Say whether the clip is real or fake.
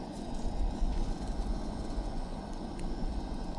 fake